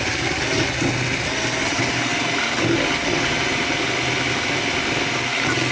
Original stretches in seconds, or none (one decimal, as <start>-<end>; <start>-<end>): 0.0-5.7